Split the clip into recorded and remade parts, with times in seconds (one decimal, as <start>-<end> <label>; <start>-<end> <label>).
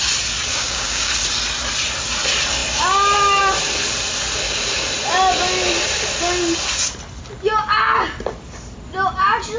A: 0.0-0.5 recorded; 0.5-1.1 remade; 1.1-9.6 recorded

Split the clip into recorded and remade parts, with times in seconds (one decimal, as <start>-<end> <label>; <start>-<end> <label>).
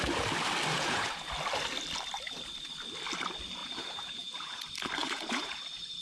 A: 0.0-0.7 recorded; 0.7-1.3 remade; 1.3-3.6 recorded; 3.6-4.6 remade; 4.6-5.0 recorded; 5.0-5.6 remade; 5.6-6.0 recorded